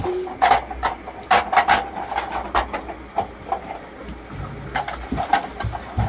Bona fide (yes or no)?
yes